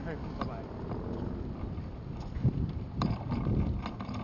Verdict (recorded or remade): recorded